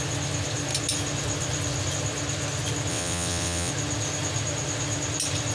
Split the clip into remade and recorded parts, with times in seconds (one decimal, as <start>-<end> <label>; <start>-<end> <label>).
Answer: 0.0-2.9 recorded; 2.9-3.7 remade; 3.7-5.5 recorded